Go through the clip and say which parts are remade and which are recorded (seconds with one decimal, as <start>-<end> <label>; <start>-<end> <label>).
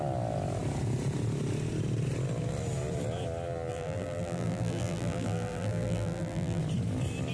0.0-3.7 recorded; 3.7-6.6 remade; 6.6-7.3 recorded